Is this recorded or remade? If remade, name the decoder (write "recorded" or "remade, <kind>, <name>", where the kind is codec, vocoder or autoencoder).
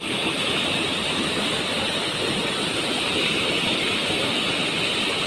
recorded